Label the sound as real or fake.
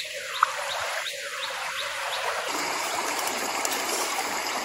fake